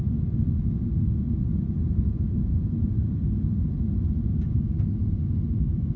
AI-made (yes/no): no